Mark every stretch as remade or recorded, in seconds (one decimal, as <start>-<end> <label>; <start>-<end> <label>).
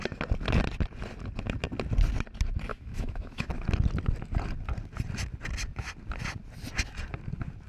0.0-2.7 recorded; 2.7-3.5 remade; 3.5-7.7 recorded